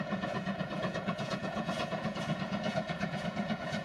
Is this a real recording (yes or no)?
no